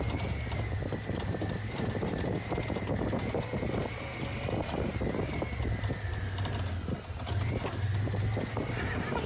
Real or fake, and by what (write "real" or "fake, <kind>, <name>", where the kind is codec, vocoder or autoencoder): real